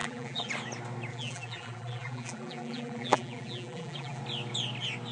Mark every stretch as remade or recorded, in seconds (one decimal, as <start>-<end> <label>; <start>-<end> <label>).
0.0-0.5 remade; 0.5-1.1 recorded; 1.1-4.2 remade; 4.2-5.1 recorded